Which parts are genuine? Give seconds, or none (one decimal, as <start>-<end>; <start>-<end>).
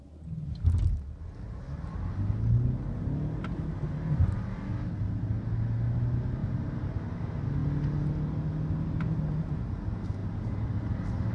0.0-11.3